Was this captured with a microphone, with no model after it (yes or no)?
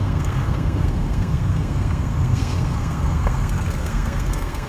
no